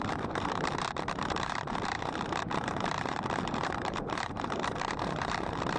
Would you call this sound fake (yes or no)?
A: yes